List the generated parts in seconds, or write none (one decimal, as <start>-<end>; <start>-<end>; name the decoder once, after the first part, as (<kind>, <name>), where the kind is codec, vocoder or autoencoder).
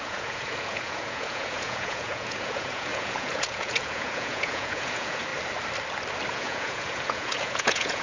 0.0-5.3 (vocoder, Vocos); 6.3-8.0